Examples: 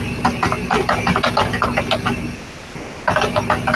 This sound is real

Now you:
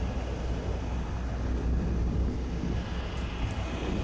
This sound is real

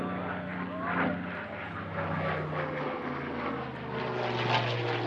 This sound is real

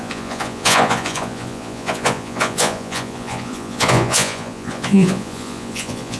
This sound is fake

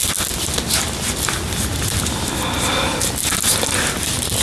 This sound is real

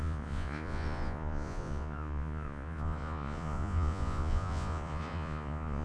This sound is fake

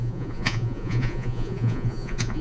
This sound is fake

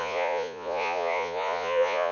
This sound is fake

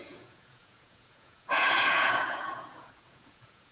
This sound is fake